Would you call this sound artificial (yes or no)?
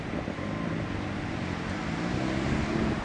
no